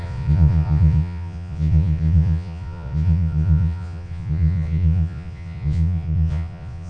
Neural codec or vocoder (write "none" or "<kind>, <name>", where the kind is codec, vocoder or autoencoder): vocoder, Vocos